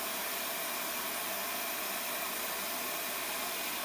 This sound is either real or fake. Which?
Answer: real